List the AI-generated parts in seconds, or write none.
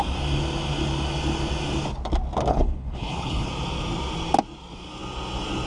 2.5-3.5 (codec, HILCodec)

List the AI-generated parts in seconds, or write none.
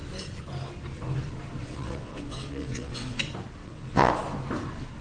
1.6-3.2 (vocoder, WaveNeXt); 3.6-4.1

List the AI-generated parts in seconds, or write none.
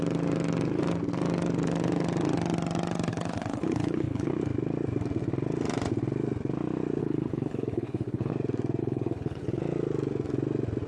3.1-4.3 (codec, HILCodec); 7.0-8.3; 8.8-9.6